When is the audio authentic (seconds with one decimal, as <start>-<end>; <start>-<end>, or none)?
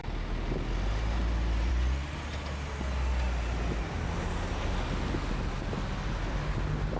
0.0-7.0